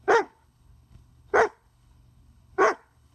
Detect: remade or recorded remade